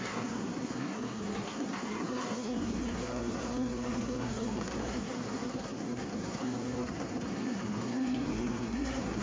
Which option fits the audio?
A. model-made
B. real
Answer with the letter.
A